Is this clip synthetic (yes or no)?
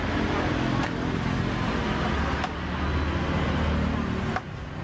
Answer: no